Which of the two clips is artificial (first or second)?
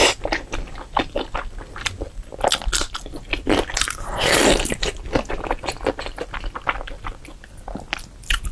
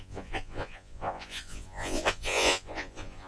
second